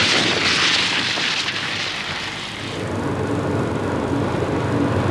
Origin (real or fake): real